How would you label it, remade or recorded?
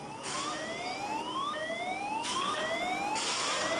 recorded